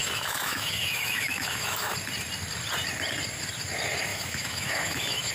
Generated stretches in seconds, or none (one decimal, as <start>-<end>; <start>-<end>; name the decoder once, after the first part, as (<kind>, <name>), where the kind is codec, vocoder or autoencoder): 0.0-1.9 (autoencoder, DAC-VAE); 4.1-5.3